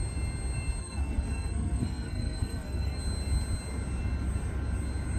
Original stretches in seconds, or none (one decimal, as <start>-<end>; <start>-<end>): 0.0-0.8; 3.0-5.2